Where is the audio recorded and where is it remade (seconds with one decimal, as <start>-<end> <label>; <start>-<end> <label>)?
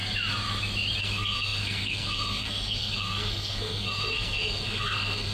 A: 0.0-1.0 recorded; 1.0-5.3 remade